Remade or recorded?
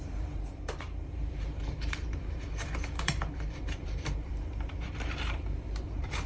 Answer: remade